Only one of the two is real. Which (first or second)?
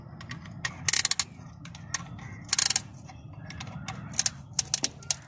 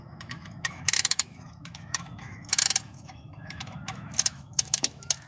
first